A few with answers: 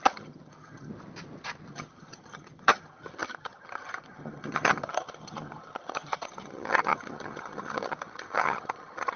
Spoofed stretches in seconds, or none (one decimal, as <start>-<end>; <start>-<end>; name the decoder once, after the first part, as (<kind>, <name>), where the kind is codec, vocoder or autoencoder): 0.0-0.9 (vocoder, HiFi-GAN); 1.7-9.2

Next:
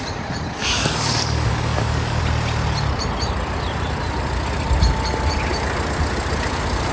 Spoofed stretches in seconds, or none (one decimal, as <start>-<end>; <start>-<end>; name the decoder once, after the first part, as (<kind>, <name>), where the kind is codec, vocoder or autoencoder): 0.6-2.2 (codec, DAC)

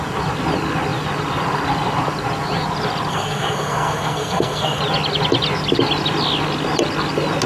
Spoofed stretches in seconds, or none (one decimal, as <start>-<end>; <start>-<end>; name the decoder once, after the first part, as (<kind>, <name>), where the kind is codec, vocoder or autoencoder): 3.1-4.8 (codec, SNAC)

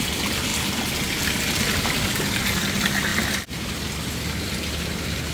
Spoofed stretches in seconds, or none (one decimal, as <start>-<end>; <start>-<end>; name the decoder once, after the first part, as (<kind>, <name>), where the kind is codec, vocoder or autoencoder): none

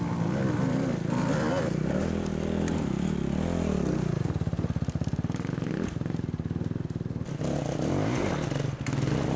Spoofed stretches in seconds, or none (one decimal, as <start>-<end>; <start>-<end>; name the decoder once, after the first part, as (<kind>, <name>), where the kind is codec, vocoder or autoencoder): none

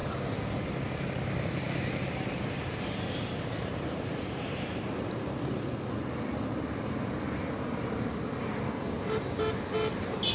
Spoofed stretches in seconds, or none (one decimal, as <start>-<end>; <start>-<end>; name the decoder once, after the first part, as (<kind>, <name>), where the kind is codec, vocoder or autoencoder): 0.0-4.8 (vocoder, BigVGAN v2)